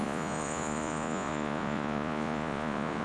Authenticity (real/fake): fake